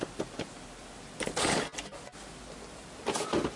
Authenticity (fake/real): real